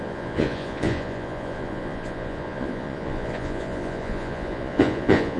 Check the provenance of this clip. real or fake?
fake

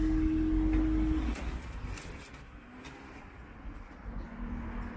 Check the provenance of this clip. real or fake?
real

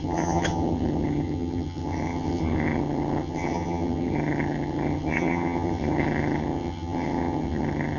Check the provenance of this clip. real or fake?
fake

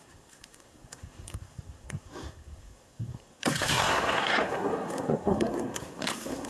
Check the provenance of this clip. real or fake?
fake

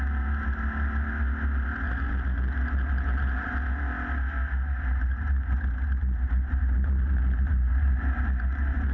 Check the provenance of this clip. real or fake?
real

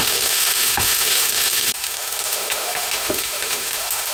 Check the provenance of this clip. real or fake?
fake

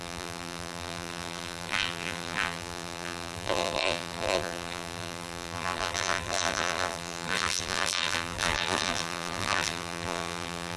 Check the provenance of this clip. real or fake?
fake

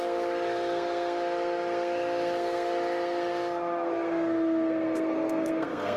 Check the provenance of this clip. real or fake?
fake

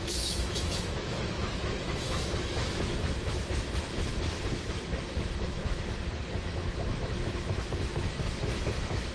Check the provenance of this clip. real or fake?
fake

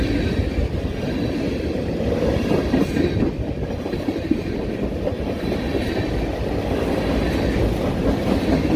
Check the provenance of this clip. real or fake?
real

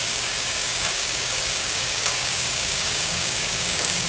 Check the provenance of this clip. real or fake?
fake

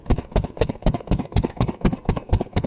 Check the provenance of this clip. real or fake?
fake